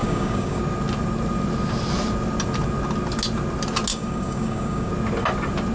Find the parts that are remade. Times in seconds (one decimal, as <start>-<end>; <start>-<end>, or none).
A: 0.0-0.6; 3.9-4.9